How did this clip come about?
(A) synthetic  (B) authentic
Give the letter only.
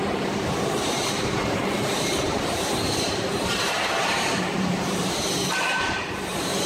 A